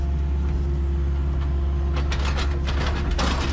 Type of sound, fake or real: real